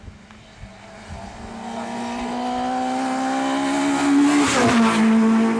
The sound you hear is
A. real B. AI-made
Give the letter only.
A